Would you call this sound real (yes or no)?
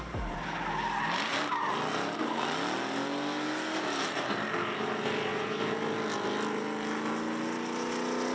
yes